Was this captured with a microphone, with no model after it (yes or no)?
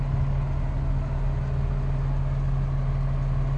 yes